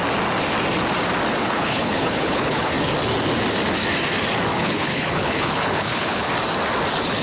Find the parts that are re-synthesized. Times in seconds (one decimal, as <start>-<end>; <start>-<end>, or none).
1.4-2.7; 4.5-6.3